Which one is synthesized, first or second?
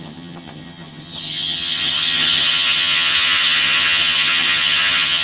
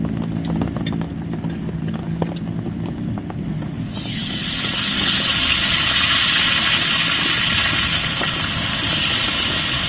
first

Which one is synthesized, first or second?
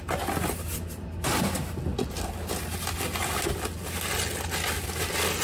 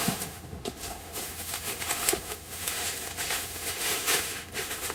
second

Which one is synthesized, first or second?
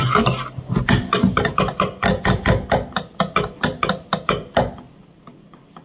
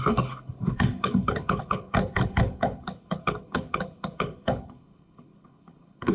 second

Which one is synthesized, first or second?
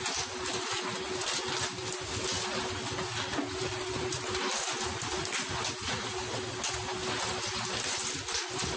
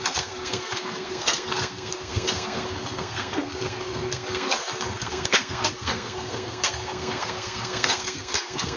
second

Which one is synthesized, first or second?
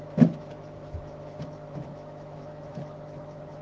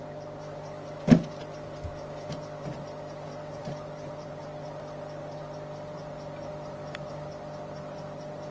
first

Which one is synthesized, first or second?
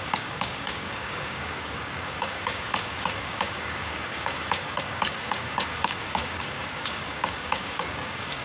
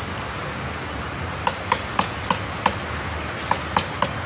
first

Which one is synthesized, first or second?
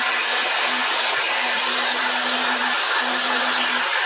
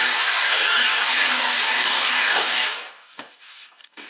second